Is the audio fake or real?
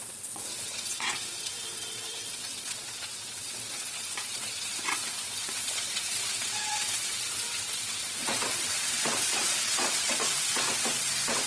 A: fake